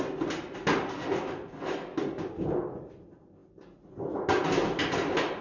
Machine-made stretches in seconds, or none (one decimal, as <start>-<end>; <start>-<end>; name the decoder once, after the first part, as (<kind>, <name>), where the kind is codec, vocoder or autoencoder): 1.9-2.9 (vocoder, BigVGAN v2)